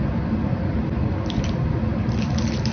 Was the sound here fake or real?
real